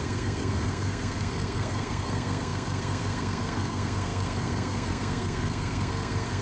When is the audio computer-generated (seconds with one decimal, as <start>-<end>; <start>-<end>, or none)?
0.0-6.4